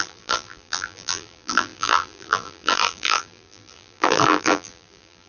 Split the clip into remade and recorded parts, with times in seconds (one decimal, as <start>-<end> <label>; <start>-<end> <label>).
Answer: 0.0-5.3 remade